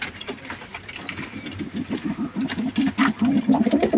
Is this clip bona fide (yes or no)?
yes